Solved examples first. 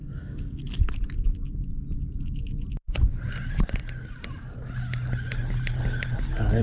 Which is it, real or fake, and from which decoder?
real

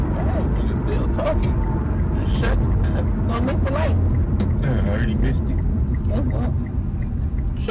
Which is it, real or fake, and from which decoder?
real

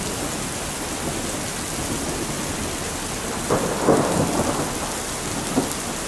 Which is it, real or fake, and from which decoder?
real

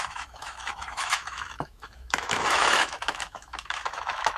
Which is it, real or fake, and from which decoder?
fake, autoencoder, DAC-VAE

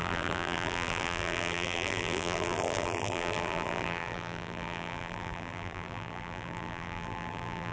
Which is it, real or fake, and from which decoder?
fake, vocoder, BigVGAN v2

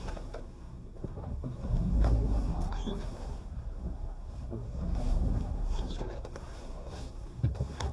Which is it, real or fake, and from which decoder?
fake, codec, SNAC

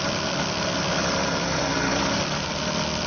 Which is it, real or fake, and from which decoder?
real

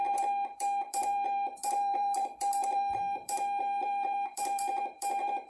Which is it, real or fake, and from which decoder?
fake, vocoder, BigVGAN v2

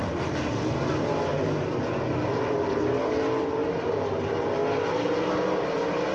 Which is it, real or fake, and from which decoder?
real